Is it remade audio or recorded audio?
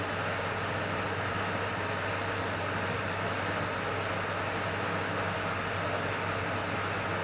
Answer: recorded